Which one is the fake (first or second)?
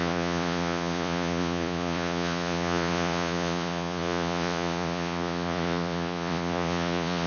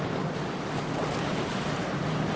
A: first